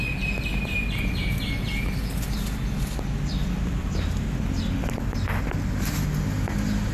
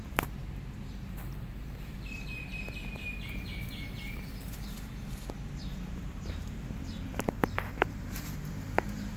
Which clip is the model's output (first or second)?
second